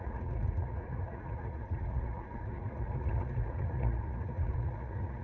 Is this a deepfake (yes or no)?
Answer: yes